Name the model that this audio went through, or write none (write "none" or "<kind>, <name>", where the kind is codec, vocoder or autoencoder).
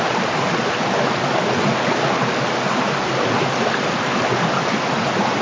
none